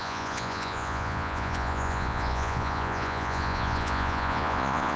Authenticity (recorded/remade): remade